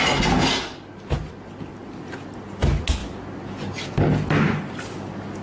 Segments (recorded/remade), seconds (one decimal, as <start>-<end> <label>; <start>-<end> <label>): 0.0-5.4 recorded

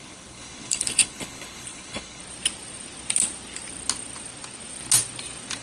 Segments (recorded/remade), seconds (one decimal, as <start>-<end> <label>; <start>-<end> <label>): 0.0-2.2 remade; 2.2-5.6 recorded